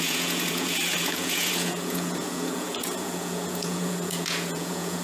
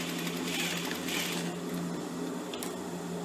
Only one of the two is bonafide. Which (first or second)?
second